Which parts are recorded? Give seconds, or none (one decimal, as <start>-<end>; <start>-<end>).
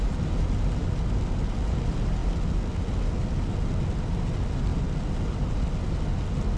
0.0-6.6